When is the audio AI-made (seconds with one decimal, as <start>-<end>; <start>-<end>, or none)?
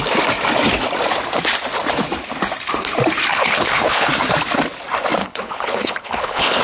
3.3-4.1; 5.2-6.6